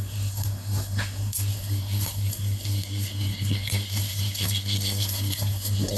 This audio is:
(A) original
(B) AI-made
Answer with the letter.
B